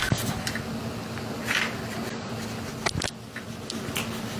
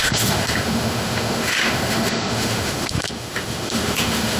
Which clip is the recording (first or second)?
first